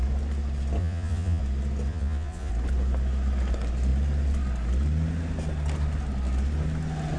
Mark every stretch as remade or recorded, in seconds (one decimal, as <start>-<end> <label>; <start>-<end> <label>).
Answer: 0.0-0.8 recorded; 0.8-1.4 remade; 1.4-1.9 recorded; 1.9-2.5 remade; 2.5-7.2 recorded